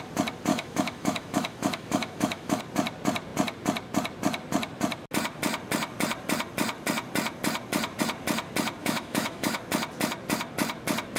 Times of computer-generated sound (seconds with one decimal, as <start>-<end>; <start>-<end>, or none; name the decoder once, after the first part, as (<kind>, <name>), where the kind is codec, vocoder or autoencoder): 0.5-2.6 (autoencoder, DAC-VAE); 8.8-9.6